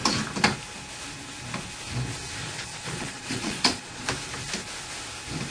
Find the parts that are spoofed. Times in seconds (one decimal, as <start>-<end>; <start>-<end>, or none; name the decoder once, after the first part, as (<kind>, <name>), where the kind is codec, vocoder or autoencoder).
2.4-4.1 (vocoder, Vocos)